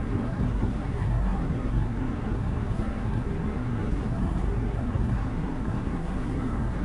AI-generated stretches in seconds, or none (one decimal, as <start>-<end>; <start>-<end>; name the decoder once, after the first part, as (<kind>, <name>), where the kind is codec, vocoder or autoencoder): 0.0-6.8 (codec, SNAC)